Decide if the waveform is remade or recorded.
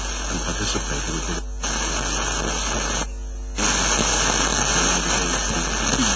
recorded